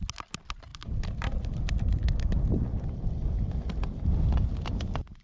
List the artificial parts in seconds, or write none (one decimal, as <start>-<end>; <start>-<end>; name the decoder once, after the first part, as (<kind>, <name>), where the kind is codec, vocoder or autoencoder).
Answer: 0.7-3.1 (vocoder, BigVGAN v2)